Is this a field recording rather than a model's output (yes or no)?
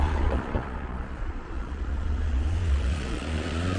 no